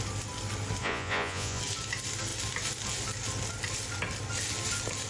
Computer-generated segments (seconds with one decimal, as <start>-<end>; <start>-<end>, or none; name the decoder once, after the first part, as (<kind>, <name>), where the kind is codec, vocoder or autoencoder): 0.8-1.6 (vocoder, Vocos)